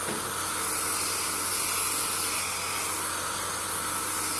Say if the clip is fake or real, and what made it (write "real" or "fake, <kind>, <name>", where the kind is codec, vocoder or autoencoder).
real